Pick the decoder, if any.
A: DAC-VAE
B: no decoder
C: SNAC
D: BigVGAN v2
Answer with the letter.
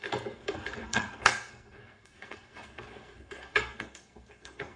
C